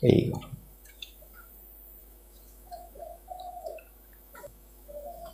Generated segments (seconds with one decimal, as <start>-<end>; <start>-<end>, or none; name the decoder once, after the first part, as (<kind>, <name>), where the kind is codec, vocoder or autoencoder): 0.5-1.5 (autoencoder, DAC-VAE); 2.0-5.3